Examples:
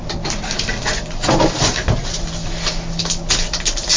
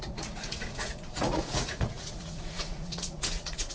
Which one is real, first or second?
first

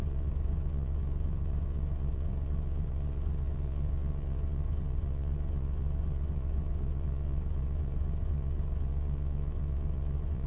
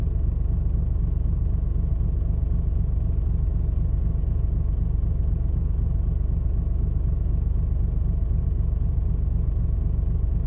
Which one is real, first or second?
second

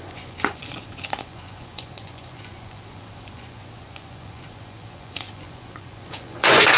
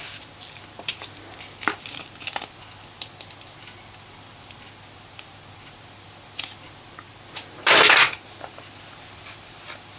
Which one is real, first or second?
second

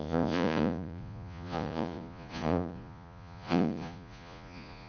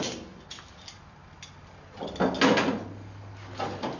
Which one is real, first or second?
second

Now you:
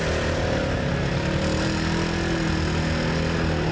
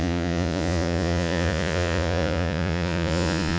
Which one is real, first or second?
first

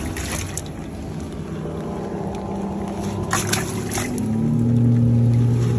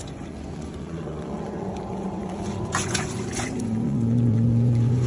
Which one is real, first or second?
first